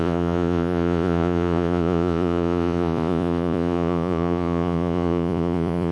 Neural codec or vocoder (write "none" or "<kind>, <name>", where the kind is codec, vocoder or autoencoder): vocoder, Vocos